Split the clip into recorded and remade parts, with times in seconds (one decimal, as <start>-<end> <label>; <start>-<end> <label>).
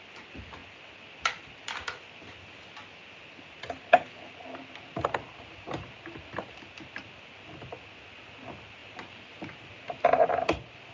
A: 0.0-10.9 recorded